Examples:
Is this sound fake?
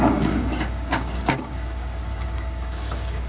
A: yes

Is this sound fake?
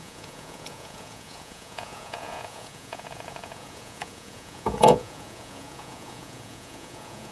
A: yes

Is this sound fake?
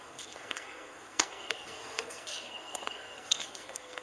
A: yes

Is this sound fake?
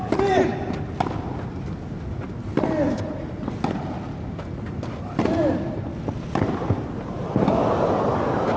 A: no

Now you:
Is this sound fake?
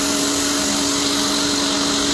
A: no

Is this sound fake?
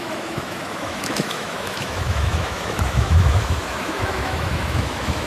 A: yes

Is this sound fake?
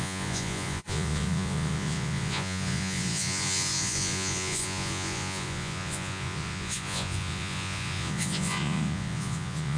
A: yes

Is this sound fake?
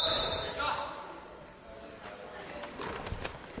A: no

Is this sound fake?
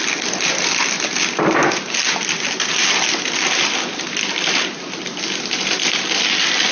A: no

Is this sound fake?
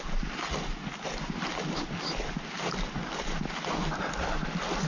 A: no